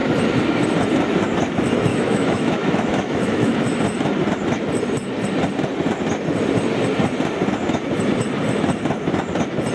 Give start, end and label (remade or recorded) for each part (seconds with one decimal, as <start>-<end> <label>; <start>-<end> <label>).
0.0-1.9 recorded; 1.9-3.6 remade; 3.6-9.7 recorded